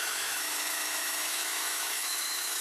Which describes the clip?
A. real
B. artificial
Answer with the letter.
B